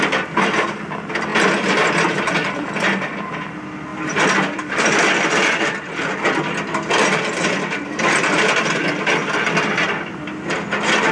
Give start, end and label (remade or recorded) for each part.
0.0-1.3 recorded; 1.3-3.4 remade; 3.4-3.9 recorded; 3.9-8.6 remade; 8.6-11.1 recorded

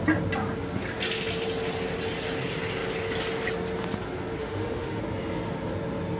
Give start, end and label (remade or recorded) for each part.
0.0-4.4 recorded; 4.4-5.0 remade; 5.0-6.2 recorded

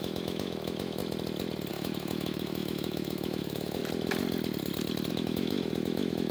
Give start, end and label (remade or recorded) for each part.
0.0-1.0 remade; 1.0-1.7 recorded; 1.7-3.8 remade; 3.8-5.1 recorded; 5.1-6.3 remade

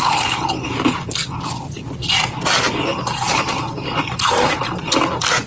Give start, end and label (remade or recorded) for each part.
0.0-5.5 recorded

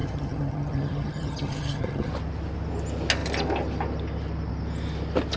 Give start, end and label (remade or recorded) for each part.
0.0-2.1 remade; 2.1-5.4 recorded

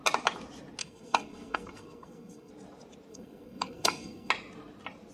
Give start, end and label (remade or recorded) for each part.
0.0-0.8 recorded; 0.8-2.5 remade; 2.5-3.1 recorded; 3.1-4.3 remade; 4.3-5.1 recorded

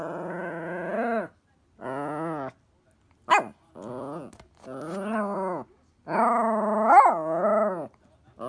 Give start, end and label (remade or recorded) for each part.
0.0-8.5 recorded